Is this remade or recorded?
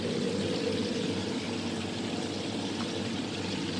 recorded